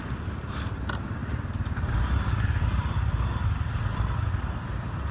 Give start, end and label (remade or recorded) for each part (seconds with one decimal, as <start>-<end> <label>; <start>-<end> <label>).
0.0-5.1 recorded